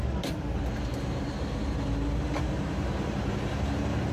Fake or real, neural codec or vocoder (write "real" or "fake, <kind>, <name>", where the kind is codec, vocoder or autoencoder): real